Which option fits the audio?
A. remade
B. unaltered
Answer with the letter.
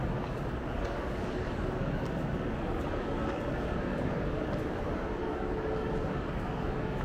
A